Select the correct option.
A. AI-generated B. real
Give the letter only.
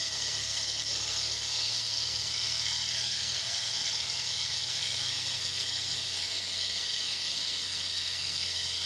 A